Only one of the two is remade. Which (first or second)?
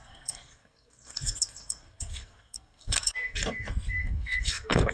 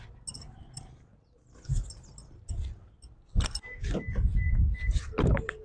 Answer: first